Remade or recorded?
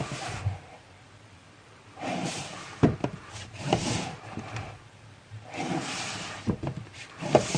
remade